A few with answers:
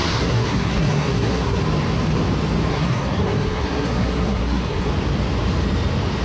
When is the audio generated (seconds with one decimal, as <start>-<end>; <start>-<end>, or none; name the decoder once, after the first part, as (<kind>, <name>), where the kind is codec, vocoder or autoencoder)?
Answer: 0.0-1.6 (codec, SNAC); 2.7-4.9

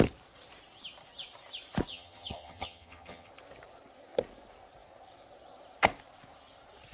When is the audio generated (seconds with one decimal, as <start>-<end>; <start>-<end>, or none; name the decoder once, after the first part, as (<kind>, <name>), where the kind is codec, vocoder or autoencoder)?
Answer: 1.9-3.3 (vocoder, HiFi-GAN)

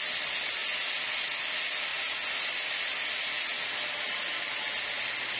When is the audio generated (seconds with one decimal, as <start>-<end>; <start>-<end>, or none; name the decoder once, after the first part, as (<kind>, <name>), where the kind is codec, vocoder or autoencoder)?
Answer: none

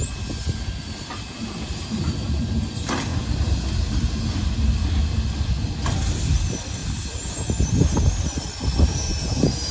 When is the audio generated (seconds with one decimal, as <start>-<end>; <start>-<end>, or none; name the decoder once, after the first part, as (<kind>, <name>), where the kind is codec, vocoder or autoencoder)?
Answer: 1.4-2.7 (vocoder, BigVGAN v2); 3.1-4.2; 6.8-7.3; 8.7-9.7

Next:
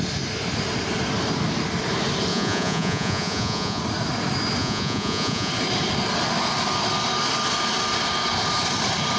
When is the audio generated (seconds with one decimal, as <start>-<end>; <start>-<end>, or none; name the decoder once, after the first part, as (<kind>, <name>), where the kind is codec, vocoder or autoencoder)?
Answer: 2.3-3.8 (vocoder, Vocos); 4.6-5.5